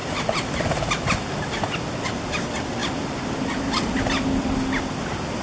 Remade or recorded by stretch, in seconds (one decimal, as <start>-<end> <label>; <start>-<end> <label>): 0.0-5.4 recorded

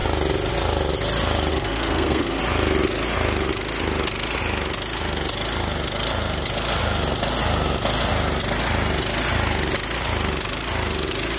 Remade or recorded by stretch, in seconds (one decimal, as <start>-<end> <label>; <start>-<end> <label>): 0.0-1.5 recorded; 1.5-2.4 remade; 2.4-11.4 recorded

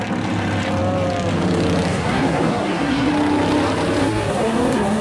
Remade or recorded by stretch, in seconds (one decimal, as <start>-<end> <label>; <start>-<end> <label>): 0.0-1.9 recorded; 1.9-3.1 remade; 3.1-4.0 recorded; 4.0-5.0 remade

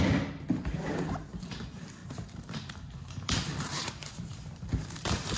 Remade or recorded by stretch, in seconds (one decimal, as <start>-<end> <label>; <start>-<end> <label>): 0.0-2.0 recorded; 2.0-5.4 remade

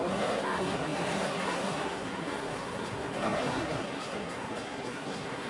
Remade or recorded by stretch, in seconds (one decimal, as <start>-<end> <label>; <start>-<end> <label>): 0.0-5.5 remade

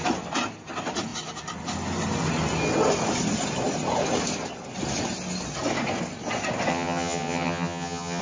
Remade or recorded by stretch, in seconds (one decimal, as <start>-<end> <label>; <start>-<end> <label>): 0.0-6.7 recorded; 6.7-8.2 remade

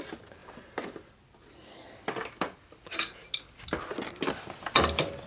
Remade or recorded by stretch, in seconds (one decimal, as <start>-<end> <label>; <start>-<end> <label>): 0.0-5.3 recorded